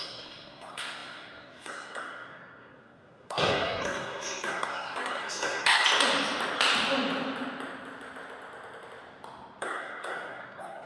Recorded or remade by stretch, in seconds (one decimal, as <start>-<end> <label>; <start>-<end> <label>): 0.0-5.8 remade; 5.8-9.6 recorded; 9.6-10.9 remade